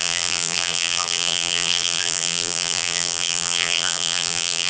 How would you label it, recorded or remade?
remade